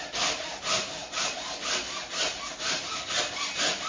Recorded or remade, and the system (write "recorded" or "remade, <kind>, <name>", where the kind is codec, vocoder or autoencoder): recorded